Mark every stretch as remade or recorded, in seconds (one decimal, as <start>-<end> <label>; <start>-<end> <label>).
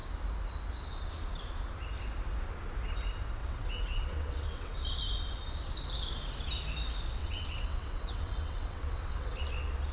0.0-3.4 recorded; 3.4-5.0 remade; 5.0-7.2 recorded; 7.2-9.4 remade; 9.4-9.9 recorded